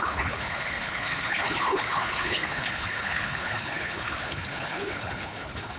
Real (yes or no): no